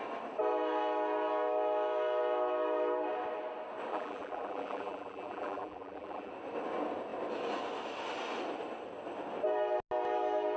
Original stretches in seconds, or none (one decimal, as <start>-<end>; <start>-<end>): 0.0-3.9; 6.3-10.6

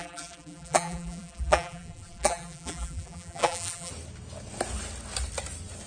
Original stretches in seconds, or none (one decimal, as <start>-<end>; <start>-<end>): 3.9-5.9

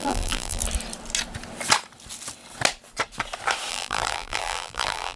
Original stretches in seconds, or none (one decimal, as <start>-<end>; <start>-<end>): 0.6-3.7

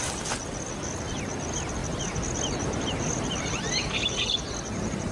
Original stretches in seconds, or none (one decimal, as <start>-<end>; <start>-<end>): 0.0-5.1

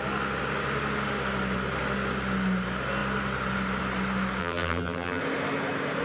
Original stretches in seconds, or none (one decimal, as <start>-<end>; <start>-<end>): 0.0-4.4; 5.2-6.0